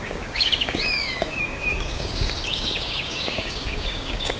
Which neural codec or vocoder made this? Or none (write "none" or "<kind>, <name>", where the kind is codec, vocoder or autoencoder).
codec, DAC